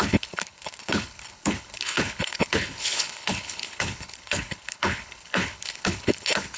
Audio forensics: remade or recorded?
remade